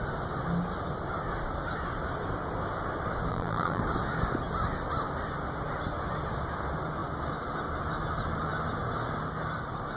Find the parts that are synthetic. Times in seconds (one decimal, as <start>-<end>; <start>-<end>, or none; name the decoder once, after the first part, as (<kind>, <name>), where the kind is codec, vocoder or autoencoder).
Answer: 3.3-3.8 (vocoder, BigVGAN v2)